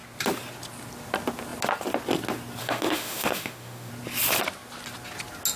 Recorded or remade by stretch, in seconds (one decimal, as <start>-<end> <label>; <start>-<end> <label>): 0.0-2.6 recorded; 2.6-3.9 remade; 3.9-5.6 recorded

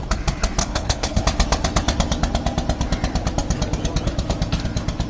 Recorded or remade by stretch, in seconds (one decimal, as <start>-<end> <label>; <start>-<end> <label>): 0.0-0.6 recorded; 0.6-1.2 remade; 1.2-5.1 recorded

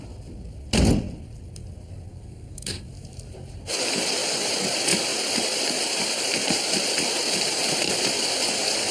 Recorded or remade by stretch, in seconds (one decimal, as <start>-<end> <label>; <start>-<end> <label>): 0.0-2.1 recorded; 2.1-2.8 remade; 2.8-8.9 recorded